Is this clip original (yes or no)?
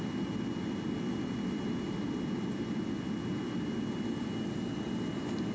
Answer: yes